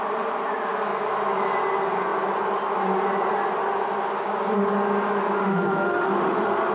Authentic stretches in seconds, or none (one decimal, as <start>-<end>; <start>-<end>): 0.0-5.4